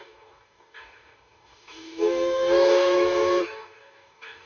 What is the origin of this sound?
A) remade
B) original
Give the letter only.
A